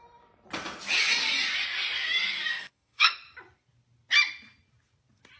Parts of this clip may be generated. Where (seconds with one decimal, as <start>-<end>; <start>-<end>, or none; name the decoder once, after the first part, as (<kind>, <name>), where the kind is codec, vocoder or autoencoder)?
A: 2.5-3.1 (codec, SNAC)